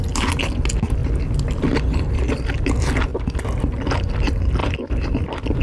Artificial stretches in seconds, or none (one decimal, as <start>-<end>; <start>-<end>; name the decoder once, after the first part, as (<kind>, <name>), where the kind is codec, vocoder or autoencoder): 4.6-5.6 (vocoder, BigVGAN v2)